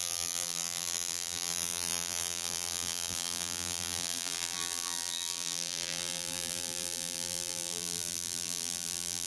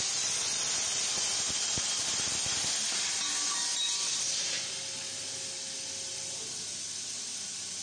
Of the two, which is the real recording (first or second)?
second